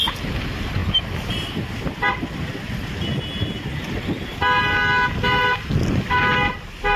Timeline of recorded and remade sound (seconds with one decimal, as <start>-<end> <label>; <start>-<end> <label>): 0.0-7.0 recorded